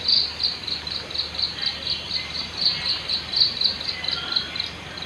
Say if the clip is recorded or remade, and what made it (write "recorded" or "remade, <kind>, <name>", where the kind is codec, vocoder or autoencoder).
recorded